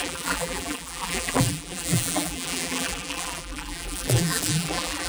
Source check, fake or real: fake